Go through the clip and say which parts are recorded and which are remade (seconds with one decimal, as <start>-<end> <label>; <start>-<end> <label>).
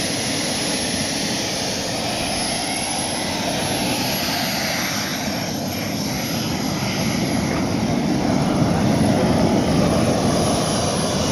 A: 0.0-2.6 recorded; 2.6-3.1 remade; 3.1-5.1 recorded; 5.1-9.4 remade; 9.4-11.3 recorded